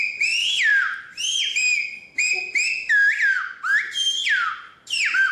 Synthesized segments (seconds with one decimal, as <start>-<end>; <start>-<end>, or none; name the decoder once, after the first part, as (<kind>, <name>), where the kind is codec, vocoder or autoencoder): none